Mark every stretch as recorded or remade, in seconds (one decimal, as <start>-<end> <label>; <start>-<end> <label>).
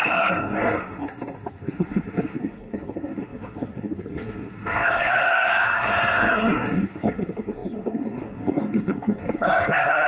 0.0-10.1 remade